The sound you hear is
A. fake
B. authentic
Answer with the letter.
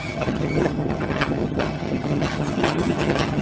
A